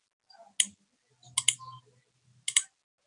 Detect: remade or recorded recorded